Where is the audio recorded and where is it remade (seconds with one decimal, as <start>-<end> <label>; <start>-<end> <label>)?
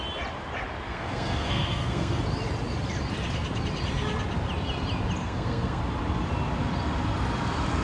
0.0-0.9 recorded; 0.9-2.2 remade; 2.2-5.2 recorded; 5.2-5.8 remade; 5.8-7.8 recorded